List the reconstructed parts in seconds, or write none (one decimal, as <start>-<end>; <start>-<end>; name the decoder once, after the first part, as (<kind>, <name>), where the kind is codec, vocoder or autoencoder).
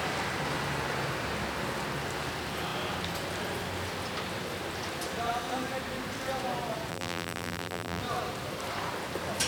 6.9-8.0 (vocoder, BigVGAN v2)